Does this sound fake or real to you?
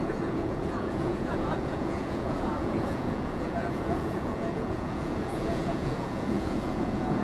fake